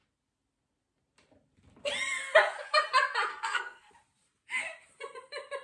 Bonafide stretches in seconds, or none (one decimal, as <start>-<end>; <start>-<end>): 0.0-3.3; 3.9-5.6